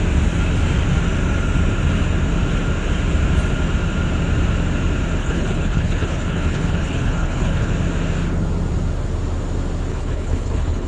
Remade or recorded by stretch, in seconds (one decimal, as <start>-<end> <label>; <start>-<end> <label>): 0.0-5.2 recorded; 5.2-7.7 remade; 7.7-9.9 recorded; 9.9-10.9 remade

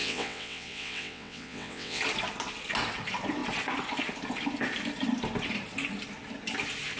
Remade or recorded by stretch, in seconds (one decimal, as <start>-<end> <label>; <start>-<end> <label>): 0.0-2.0 remade; 2.0-7.0 recorded

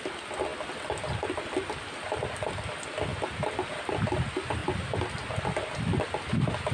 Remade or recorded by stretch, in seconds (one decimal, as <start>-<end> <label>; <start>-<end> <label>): 0.0-6.7 recorded

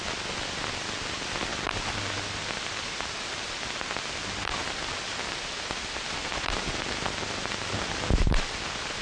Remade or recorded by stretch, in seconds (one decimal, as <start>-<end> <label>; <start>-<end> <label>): 0.0-1.5 recorded; 1.5-2.0 remade; 2.0-6.2 recorded; 6.2-9.0 remade

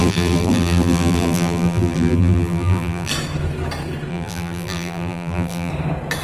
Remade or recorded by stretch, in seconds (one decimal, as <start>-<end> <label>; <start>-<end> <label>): 0.0-3.1 remade; 3.1-4.1 recorded; 4.1-5.7 remade; 5.7-6.2 recorded

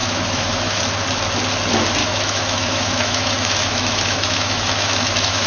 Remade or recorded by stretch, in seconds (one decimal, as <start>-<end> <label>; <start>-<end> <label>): 0.0-0.8 remade; 0.8-2.0 recorded; 2.0-5.5 remade

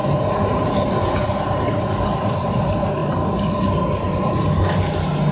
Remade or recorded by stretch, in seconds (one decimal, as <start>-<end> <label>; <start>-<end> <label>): 0.0-5.3 recorded